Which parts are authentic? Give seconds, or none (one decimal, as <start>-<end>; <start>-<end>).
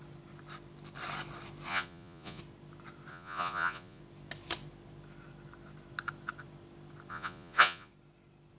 0.0-1.7; 2.4-3.1; 4.0-7.1; 7.9-8.6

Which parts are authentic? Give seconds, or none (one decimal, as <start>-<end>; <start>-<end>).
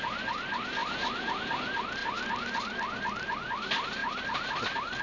0.0-0.8; 1.4-4.0; 4.5-5.0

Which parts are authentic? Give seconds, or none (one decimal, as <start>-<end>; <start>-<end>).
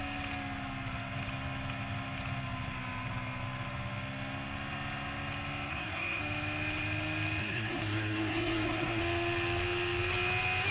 0.0-5.7; 6.2-7.4; 9.0-10.7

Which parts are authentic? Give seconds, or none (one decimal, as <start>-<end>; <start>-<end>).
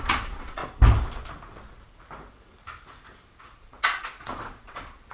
0.6-3.4